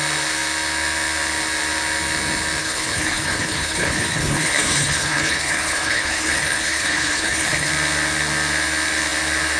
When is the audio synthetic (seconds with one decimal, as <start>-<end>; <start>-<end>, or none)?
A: 2.6-7.7